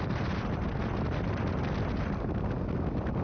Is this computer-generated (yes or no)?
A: no